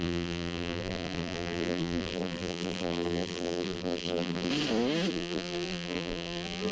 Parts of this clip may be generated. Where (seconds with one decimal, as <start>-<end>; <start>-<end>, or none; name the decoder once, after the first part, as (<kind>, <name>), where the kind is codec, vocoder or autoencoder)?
0.0-4.5 (vocoder, BigVGAN v2); 5.1-6.7